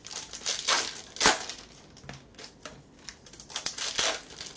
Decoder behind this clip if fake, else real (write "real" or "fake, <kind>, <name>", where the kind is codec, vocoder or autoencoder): real